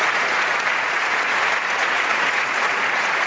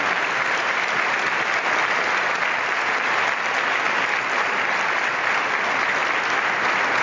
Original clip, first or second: second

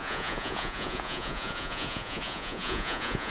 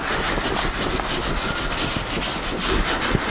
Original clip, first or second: second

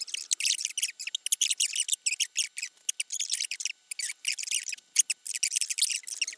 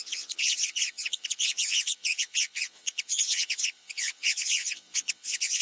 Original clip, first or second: first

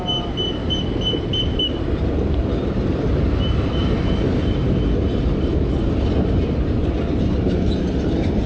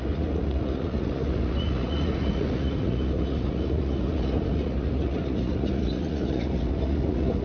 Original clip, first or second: first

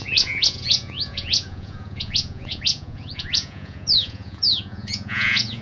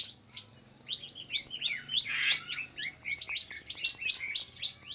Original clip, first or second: second